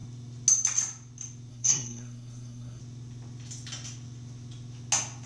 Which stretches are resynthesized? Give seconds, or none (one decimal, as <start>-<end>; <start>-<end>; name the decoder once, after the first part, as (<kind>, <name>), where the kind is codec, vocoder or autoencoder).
1.5-2.8 (codec, SNAC)